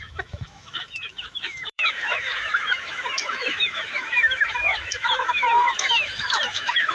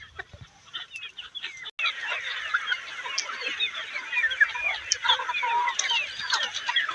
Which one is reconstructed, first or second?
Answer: first